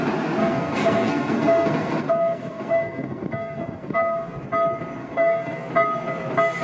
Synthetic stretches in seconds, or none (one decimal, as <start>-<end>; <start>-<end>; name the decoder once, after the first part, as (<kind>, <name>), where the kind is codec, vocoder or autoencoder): 0.4-4.4 (codec, SNAC); 5.0-5.7